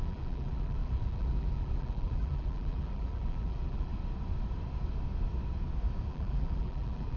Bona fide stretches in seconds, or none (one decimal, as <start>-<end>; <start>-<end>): 3.9-6.1